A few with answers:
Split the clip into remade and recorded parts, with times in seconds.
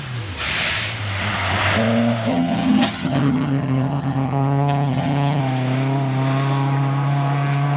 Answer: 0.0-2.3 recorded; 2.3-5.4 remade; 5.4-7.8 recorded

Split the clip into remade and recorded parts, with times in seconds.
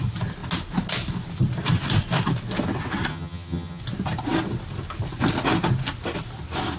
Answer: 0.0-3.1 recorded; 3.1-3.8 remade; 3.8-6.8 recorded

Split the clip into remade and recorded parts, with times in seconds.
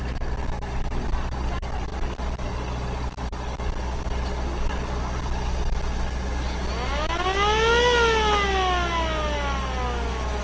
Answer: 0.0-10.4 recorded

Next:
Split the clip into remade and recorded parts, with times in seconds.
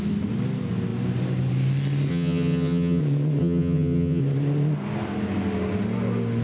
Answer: 0.0-2.1 recorded; 2.1-3.0 remade; 3.0-3.4 recorded; 3.4-4.2 remade; 4.2-6.4 recorded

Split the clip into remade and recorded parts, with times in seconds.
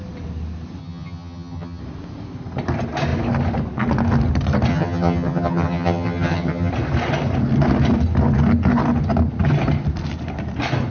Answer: 0.0-0.8 recorded; 0.8-1.8 remade; 1.8-4.7 recorded; 4.7-6.7 remade; 6.7-10.9 recorded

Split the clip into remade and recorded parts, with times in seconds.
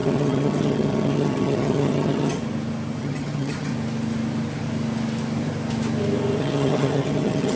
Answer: 0.0-2.4 remade; 2.4-3.0 recorded; 3.0-3.7 remade; 3.7-6.4 recorded; 6.4-7.6 remade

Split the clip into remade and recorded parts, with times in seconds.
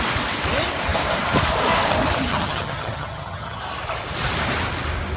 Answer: 0.0-2.3 recorded; 2.3-3.6 remade; 3.6-5.2 recorded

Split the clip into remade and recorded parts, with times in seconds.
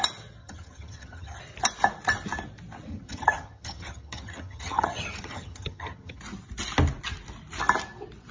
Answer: 0.0-0.4 recorded; 0.4-1.4 remade; 1.4-2.9 recorded; 2.9-6.2 remade; 6.2-8.3 recorded